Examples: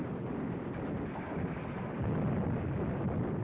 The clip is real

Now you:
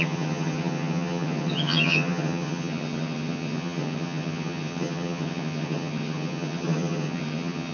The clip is fake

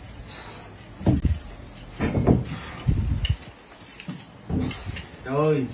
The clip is real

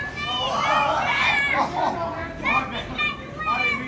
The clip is real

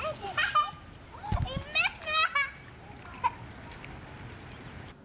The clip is real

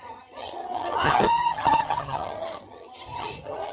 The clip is fake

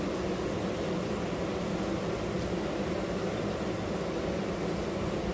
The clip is real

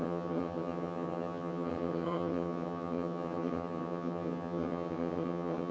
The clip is fake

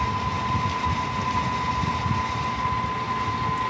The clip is real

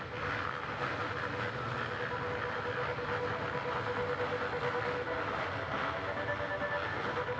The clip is real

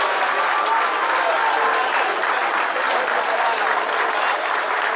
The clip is real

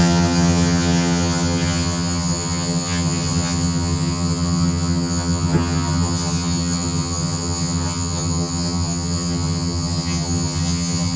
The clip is fake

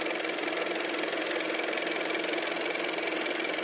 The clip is real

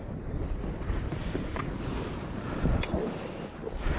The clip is real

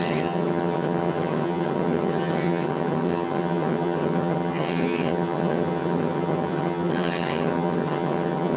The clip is fake